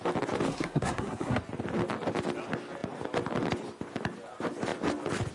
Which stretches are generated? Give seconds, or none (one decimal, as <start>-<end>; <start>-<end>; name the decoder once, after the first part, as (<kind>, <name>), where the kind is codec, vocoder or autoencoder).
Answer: 0.5-1.4 (codec, SNAC)